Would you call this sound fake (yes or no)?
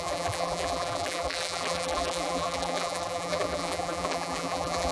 yes